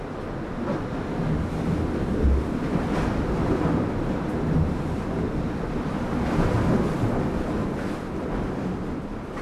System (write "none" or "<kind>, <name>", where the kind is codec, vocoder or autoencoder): none